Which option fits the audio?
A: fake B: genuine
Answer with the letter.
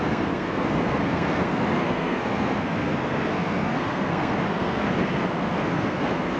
A